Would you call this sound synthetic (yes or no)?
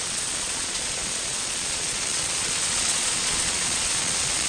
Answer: yes